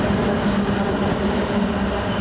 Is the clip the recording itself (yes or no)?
yes